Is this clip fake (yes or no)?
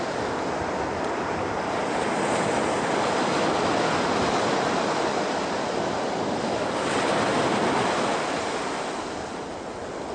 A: no